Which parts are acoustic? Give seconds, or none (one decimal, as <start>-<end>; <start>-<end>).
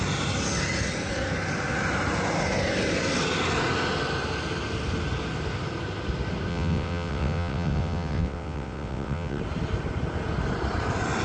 0.0-6.5; 9.4-11.2